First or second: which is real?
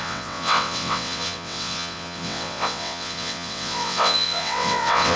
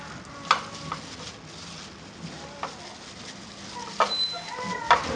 second